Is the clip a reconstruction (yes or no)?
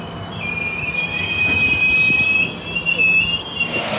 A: no